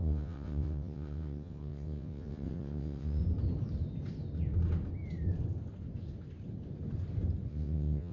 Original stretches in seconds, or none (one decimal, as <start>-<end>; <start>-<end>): 3.2-7.5